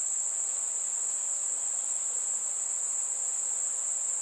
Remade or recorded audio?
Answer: recorded